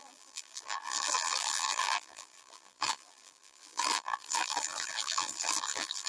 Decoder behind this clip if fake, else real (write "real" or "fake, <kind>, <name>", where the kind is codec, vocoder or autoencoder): fake, vocoder, BigVGAN v2